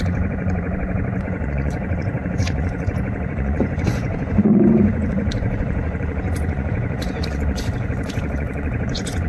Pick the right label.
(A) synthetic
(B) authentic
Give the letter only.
A